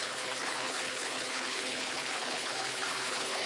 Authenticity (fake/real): fake